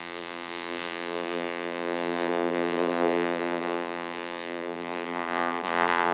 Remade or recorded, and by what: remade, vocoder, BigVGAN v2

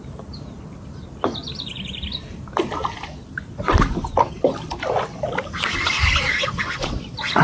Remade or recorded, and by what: remade, vocoder, BigVGAN v2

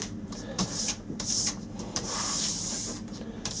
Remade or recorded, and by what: remade, vocoder, BigVGAN v2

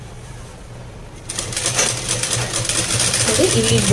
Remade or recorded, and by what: recorded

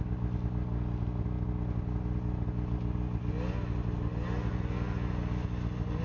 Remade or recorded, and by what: recorded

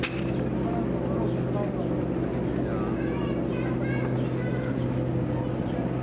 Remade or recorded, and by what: recorded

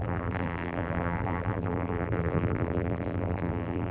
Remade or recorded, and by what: remade, vocoder, BigVGAN v2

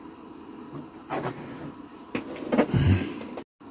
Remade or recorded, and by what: recorded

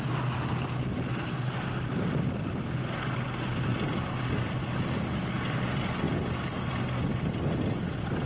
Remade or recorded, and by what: recorded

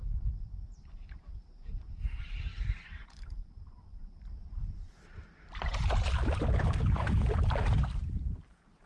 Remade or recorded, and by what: remade, vocoder, BigVGAN v2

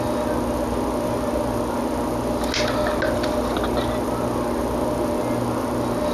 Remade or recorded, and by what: recorded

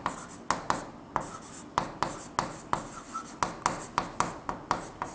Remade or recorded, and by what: recorded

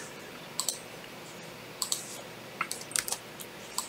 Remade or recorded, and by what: remade, vocoder, BigVGAN v2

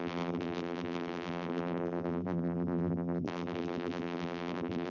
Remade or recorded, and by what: remade, vocoder, BigVGAN v2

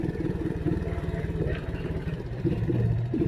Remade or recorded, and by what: remade, vocoder, BigVGAN v2